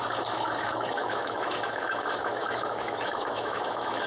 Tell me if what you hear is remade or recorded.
remade